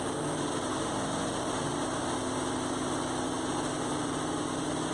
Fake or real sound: real